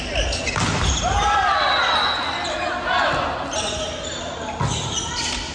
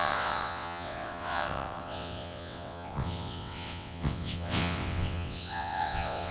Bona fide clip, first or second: first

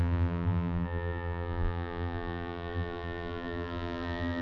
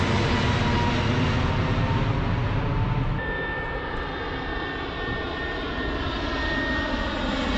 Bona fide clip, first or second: second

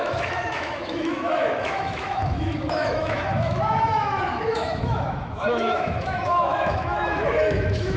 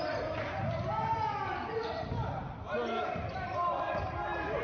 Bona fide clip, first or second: second